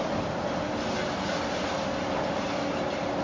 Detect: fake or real real